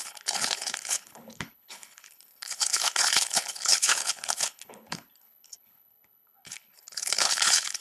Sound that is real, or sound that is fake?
fake